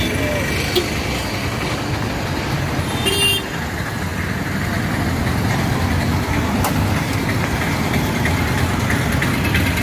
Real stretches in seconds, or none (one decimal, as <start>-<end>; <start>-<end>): 0.0-9.8